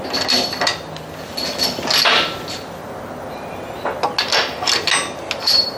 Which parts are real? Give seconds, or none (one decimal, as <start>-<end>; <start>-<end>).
0.0-5.8